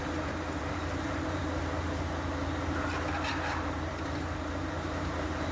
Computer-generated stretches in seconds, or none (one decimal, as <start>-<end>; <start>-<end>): 0.6-1.4; 3.3-5.5